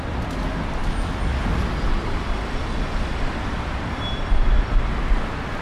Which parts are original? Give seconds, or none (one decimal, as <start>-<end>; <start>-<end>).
0.0-5.6